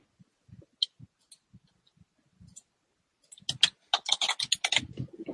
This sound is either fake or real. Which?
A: real